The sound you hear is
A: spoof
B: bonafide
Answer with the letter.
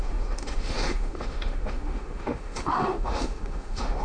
A